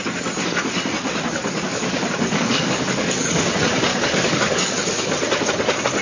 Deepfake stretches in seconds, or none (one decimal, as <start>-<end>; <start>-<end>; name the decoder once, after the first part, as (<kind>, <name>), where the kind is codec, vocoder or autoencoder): 1.4-3.5 (codec, DAC); 3.9-5.1